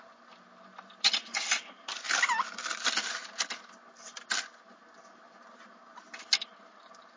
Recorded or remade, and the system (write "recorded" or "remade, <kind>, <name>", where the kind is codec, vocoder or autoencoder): recorded